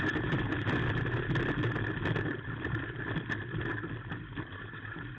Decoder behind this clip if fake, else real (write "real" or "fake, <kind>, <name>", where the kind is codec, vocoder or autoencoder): real